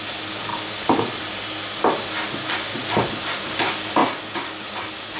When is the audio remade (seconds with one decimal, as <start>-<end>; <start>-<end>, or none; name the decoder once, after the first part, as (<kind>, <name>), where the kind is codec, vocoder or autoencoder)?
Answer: none